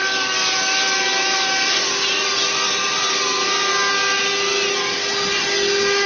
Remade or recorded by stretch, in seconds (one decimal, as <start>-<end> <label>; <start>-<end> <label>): 0.0-6.1 recorded